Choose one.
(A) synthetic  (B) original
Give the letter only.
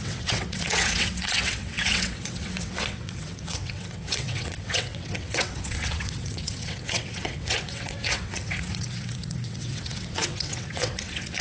A